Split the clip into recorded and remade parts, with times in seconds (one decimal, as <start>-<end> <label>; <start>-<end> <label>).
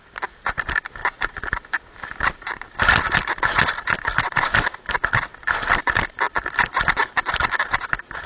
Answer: 0.0-8.3 recorded